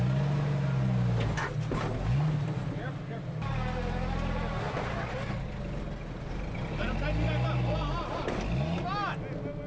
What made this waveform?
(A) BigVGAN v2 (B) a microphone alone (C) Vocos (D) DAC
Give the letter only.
B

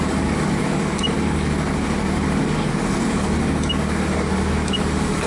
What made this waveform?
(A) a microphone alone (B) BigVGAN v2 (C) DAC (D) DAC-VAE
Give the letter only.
C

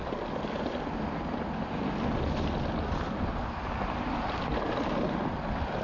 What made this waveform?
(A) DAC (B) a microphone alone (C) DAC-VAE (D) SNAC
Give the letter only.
B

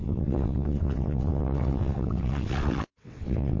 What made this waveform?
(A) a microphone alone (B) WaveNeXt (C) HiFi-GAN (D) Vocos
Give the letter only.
B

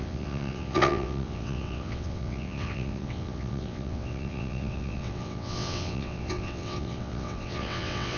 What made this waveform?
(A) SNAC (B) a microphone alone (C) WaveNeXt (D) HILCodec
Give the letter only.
C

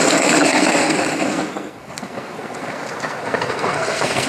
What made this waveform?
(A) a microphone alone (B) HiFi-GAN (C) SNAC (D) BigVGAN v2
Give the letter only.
C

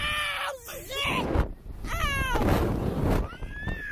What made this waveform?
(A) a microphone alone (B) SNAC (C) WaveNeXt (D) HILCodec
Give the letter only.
A